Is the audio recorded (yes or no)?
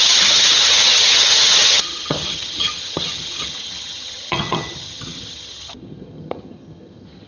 no